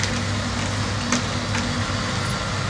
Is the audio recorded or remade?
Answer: recorded